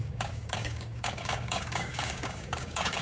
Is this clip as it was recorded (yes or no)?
no